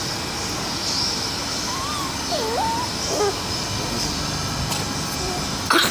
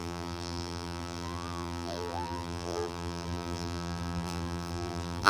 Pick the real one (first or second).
first